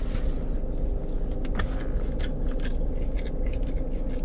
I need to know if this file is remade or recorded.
recorded